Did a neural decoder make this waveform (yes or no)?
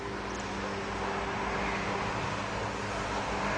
no